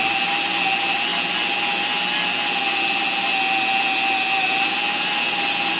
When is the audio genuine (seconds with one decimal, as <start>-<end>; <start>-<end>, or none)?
0.0-5.8